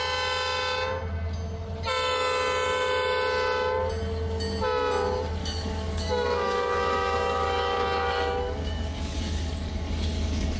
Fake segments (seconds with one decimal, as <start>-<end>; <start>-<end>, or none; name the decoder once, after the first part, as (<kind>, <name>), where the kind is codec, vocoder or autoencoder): 5.4-10.6 (codec, DAC)